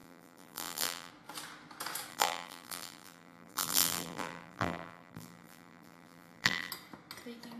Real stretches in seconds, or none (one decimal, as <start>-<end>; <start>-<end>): 1.1-2.1; 6.7-7.6